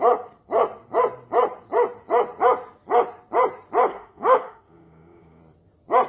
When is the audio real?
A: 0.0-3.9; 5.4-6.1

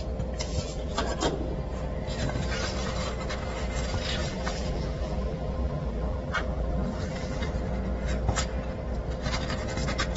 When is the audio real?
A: 0.0-0.5; 1.0-4.2; 7.5-10.2

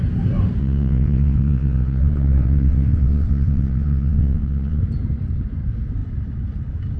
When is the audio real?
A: 0.0-0.6; 4.8-7.0